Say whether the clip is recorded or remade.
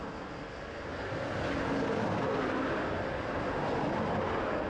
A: recorded